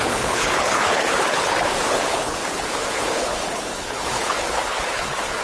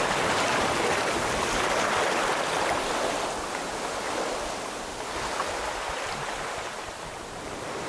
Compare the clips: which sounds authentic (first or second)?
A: second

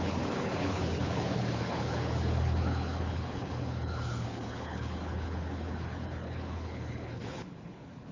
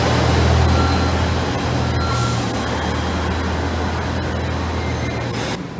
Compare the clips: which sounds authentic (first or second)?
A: second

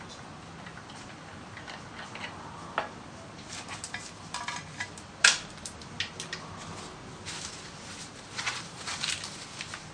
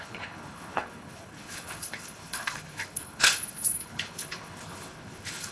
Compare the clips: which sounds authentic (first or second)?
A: first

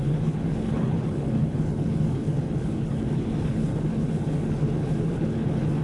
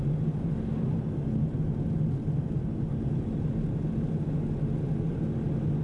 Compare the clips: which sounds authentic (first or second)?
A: second